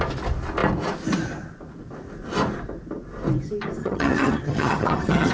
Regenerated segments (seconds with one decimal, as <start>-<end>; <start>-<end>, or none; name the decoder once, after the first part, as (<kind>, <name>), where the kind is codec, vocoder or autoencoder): 3.8-5.3 (vocoder, HiFi-GAN)